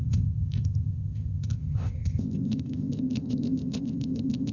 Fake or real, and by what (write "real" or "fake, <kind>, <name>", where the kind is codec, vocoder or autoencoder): fake, codec, ZipCodec